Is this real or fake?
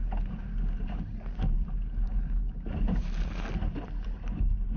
real